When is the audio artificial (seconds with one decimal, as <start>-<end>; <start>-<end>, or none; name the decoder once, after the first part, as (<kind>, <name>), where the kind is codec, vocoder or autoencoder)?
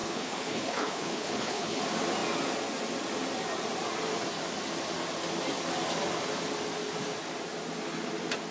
0.0-1.8 (codec, HILCodec)